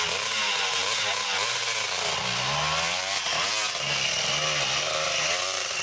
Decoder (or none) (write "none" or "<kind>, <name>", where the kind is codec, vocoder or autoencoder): none